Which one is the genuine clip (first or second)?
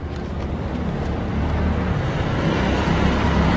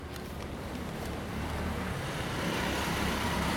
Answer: first